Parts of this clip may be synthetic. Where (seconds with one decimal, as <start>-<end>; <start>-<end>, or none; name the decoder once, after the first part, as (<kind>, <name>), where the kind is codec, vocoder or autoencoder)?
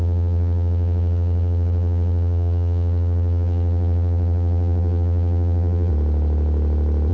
0.0-5.9 (vocoder, BigVGAN v2)